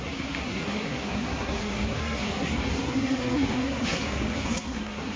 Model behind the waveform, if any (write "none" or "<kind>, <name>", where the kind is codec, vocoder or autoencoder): codec, SNAC